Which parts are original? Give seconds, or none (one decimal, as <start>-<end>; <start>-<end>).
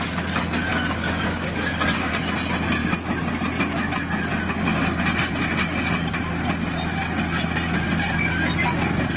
0.0-0.7; 2.1-9.2